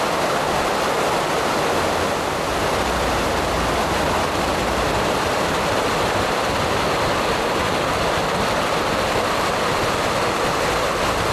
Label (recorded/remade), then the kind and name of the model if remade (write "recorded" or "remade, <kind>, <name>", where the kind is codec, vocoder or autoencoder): recorded